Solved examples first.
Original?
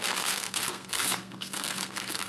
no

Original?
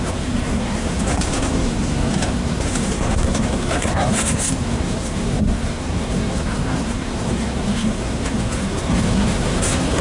no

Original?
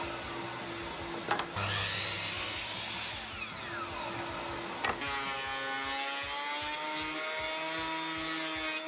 yes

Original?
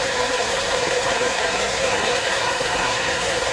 no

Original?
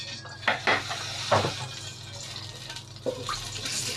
yes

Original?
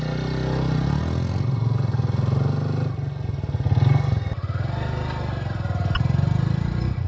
yes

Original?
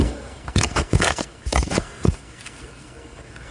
no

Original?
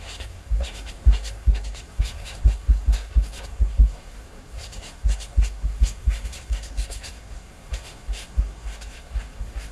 no